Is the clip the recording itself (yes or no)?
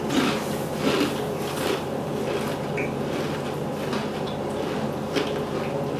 yes